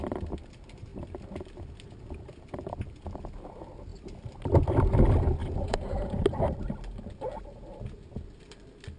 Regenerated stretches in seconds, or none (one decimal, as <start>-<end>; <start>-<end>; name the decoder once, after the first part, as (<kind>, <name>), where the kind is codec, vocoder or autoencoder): 5.4-6.2 (vocoder, Vocos)